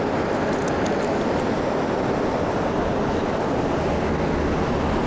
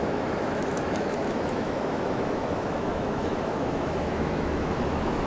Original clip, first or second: first